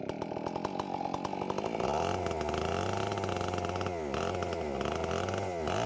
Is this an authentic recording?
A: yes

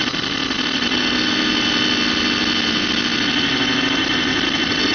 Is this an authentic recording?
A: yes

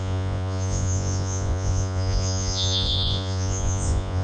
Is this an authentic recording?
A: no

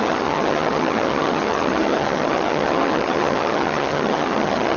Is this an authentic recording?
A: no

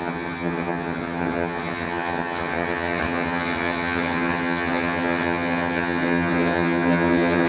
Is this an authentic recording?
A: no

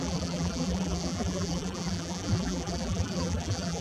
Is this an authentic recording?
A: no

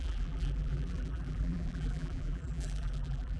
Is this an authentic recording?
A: no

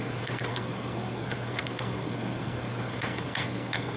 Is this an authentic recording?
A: no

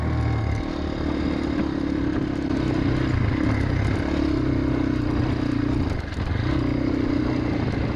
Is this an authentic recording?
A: yes